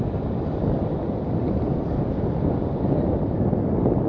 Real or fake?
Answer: real